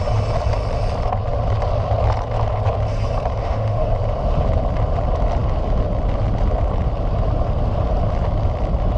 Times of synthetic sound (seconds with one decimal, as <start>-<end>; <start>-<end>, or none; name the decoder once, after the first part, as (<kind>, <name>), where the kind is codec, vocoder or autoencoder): 3.4-3.9 (autoencoder, DAC-VAE)

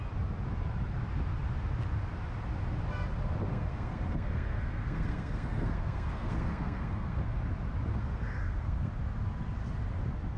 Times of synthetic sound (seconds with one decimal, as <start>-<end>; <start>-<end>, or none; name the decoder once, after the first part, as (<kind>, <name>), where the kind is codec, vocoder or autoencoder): 3.5-7.4 (codec, SNAC); 7.9-8.9

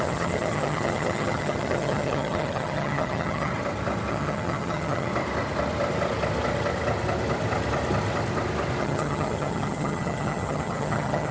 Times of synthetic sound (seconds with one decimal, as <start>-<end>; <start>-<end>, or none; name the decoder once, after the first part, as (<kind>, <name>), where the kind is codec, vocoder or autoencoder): 0.0-3.5 (vocoder, HiFi-GAN); 4.1-5.1; 8.8-11.3

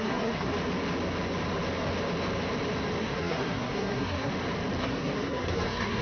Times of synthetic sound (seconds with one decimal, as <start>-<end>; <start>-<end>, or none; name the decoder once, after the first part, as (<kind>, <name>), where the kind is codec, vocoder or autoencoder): 0.0-0.5 (codec, SNAC); 3.0-4.3; 4.8-6.0

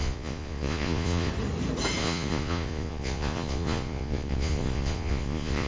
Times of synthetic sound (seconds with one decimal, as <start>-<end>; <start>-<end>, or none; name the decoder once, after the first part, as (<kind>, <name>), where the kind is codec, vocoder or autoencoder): 0.0-1.3 (vocoder, Vocos); 2.0-5.7

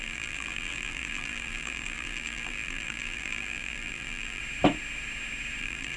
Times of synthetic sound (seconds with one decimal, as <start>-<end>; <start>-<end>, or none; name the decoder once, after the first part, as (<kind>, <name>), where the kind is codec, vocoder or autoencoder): 0.0-4.4 (vocoder, BigVGAN v2); 5.6-6.0

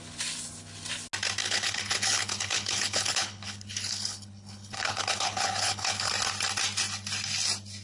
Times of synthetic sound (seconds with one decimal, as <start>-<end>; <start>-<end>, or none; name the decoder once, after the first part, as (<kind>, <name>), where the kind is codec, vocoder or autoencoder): 1.4-6.1 (codec, HILCodec)